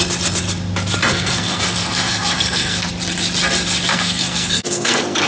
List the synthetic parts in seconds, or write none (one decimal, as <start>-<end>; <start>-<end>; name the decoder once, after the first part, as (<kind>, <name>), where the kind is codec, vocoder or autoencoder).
1.1-2.9 (codec, SNAC); 3.9-5.3